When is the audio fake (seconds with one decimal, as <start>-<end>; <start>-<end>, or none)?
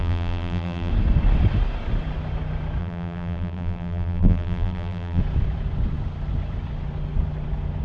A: 0.0-0.9; 2.8-5.2